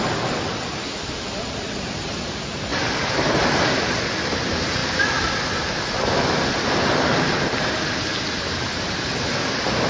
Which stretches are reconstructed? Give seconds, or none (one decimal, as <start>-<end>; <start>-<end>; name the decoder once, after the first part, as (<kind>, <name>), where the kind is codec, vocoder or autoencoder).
0.0-0.8 (vocoder, BigVGAN v2); 1.5-9.9

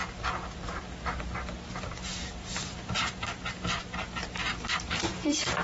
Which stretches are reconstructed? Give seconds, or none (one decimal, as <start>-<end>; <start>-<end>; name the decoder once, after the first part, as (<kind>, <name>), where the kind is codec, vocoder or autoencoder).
1.7-5.6 (vocoder, BigVGAN v2)

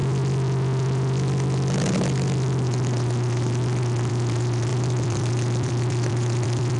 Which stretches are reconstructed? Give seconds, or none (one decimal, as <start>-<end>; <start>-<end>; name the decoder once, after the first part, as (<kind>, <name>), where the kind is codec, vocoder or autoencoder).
4.7-6.8 (vocoder, BigVGAN v2)

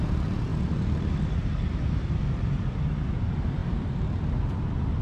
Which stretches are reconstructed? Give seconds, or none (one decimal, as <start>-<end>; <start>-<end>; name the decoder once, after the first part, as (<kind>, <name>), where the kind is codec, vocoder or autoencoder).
none